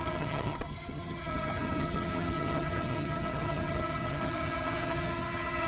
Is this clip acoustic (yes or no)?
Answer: no